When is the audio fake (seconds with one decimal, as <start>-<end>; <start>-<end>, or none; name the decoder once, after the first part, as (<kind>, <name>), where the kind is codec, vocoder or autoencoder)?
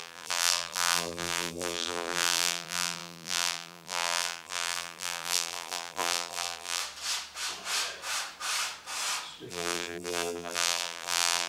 0.0-6.8 (vocoder, BigVGAN v2); 9.5-11.5